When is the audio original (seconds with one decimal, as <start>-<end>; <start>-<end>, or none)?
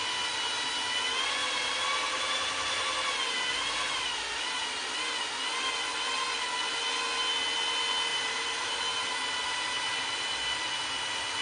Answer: 0.0-1.4; 4.5-8.1; 8.8-11.4